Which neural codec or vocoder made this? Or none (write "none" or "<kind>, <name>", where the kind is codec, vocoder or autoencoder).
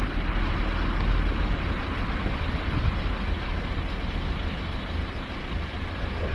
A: none